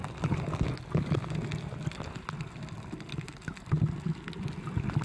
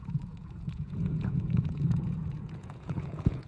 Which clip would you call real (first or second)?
first